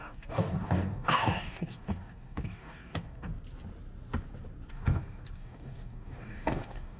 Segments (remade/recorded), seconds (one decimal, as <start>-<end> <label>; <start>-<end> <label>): 0.0-3.3 remade; 3.3-4.7 recorded; 4.7-7.0 remade